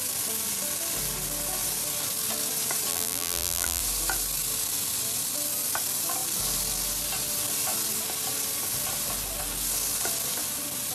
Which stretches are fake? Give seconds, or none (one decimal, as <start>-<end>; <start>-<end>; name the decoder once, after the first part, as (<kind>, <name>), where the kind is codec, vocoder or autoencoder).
2.9-3.8 (vocoder, BigVGAN v2)